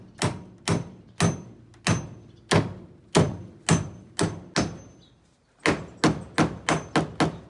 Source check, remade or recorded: recorded